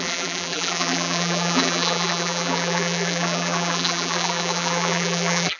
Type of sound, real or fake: fake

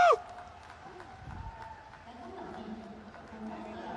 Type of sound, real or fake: real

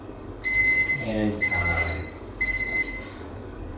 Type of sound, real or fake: fake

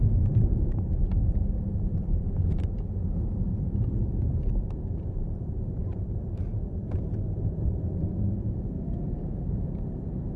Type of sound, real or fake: fake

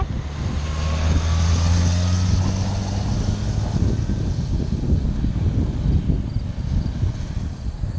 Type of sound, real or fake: real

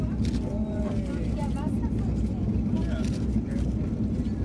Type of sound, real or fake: real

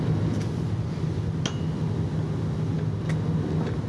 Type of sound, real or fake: real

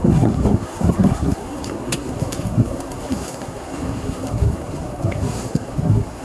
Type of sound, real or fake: fake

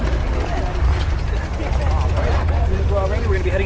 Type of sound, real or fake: real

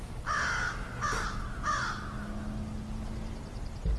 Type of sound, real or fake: real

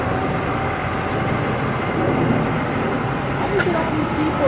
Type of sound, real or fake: real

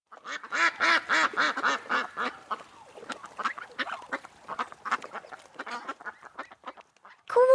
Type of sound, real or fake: real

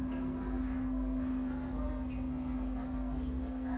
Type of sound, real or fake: fake